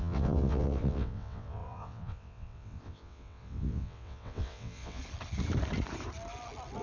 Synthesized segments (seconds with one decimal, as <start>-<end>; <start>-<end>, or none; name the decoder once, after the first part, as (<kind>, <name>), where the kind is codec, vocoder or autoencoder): 0.0-5.0 (vocoder, WaveNeXt)